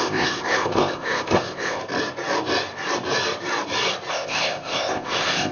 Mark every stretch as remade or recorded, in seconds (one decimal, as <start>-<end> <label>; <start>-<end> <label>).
0.0-1.8 remade; 1.8-4.1 recorded; 4.1-5.5 remade